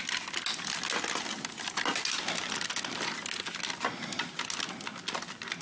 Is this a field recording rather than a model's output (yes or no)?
yes